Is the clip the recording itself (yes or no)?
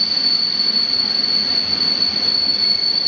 yes